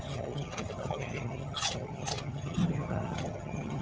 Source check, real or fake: fake